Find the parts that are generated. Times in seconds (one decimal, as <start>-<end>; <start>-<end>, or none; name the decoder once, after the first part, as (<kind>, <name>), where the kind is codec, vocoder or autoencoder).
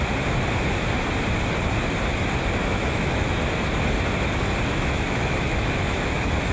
2.6-3.4 (autoencoder, DAC-VAE); 4.7-6.5